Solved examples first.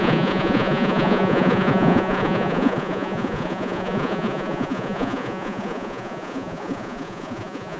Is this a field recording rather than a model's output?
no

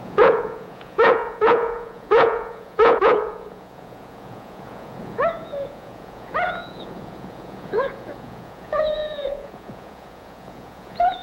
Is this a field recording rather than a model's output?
no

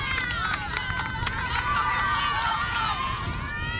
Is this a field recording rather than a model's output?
no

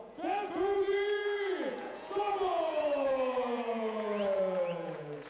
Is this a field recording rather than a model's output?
no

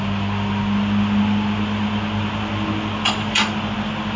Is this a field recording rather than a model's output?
yes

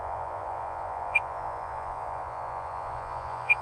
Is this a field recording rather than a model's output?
no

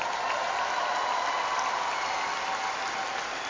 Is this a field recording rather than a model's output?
yes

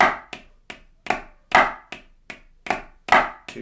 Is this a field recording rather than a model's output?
yes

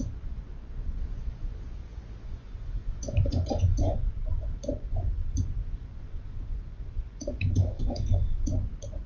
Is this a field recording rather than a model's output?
no